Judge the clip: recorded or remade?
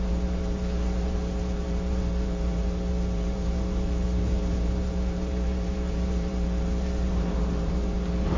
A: remade